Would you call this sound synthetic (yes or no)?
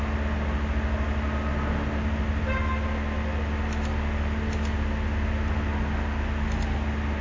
no